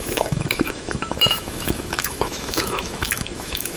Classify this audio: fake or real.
fake